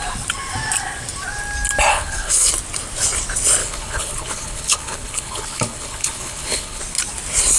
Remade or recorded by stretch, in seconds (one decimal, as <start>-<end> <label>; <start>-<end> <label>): 0.0-1.9 recorded; 1.9-2.5 remade; 2.5-3.6 recorded; 3.6-6.8 remade; 6.8-7.6 recorded